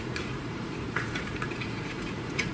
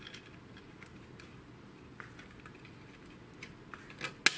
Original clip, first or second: second